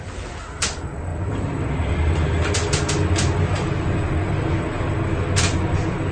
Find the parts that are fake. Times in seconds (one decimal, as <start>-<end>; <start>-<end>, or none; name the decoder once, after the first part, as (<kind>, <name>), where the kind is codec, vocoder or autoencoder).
none

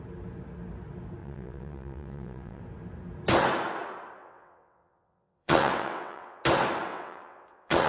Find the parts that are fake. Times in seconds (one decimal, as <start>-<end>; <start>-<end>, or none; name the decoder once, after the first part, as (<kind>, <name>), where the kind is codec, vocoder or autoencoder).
1.2-2.6 (vocoder, WaveNeXt); 4.2-6.4; 6.9-7.9

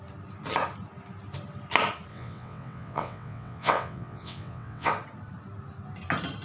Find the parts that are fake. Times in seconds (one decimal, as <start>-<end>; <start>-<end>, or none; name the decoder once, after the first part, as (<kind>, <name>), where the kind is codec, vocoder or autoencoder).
2.1-4.9 (vocoder, WaveNeXt)

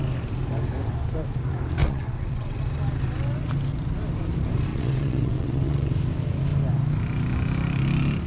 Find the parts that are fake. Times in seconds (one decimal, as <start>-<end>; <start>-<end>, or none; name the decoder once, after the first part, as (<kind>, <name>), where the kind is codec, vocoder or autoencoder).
1.8-2.6 (vocoder, WaveNeXt); 4.7-5.9